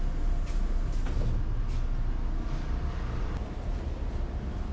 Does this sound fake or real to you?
real